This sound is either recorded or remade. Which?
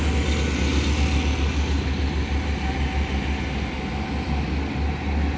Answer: recorded